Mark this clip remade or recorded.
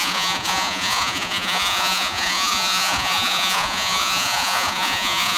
remade